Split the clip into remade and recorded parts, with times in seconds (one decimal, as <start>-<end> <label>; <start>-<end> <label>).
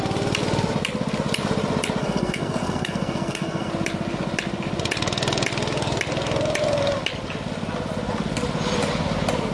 0.0-2.0 recorded; 2.0-3.7 remade; 3.7-9.5 recorded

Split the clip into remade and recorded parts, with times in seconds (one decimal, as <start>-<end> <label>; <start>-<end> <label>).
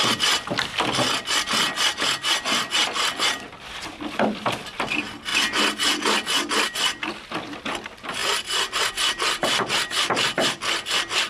0.0-11.3 recorded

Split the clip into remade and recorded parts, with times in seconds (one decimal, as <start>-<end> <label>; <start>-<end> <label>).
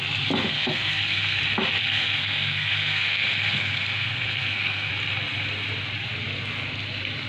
0.0-0.5 recorded; 0.5-1.4 remade; 1.4-1.8 recorded; 1.8-4.9 remade; 4.9-7.3 recorded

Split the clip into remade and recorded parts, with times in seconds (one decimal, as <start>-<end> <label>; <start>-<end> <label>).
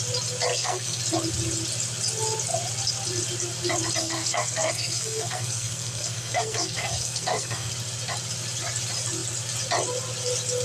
0.0-0.5 recorded; 0.5-1.0 remade; 1.0-4.0 recorded; 4.0-7.7 remade; 7.7-10.6 recorded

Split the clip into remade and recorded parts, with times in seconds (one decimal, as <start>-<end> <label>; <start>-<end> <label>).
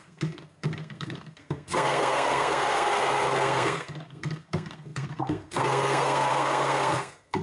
0.0-7.4 remade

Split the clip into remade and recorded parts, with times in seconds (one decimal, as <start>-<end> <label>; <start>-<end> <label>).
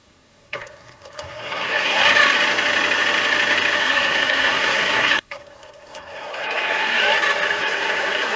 0.0-2.0 remade; 2.0-3.8 recorded; 3.8-7.0 remade; 7.0-7.6 recorded; 7.6-8.4 remade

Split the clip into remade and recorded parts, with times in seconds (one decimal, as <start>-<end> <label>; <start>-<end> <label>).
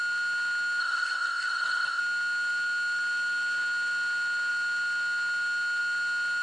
0.0-0.8 recorded; 0.8-2.0 remade; 2.0-6.4 recorded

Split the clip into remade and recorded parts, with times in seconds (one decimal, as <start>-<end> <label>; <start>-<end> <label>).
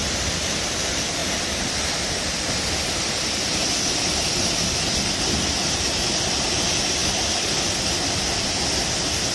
0.0-9.3 recorded